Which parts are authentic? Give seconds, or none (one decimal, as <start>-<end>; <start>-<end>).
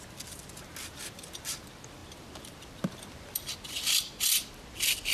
0.0-5.1